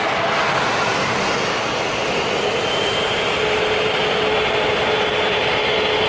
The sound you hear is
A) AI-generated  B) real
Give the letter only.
B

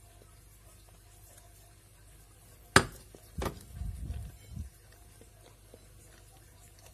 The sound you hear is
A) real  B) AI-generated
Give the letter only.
A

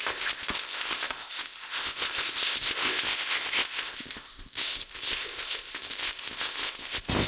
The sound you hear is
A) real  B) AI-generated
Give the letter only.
B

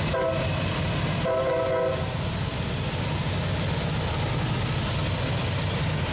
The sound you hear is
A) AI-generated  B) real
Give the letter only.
B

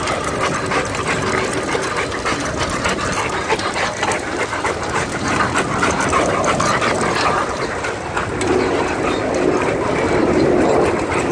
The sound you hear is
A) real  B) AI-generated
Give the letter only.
A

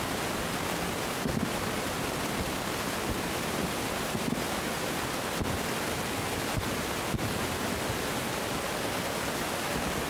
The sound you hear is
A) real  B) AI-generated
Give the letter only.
B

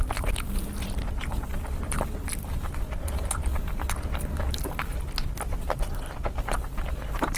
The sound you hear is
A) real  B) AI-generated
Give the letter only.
A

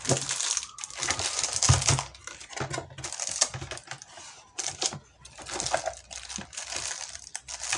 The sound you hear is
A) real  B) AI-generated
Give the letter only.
A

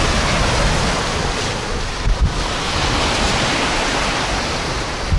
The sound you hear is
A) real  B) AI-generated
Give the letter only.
A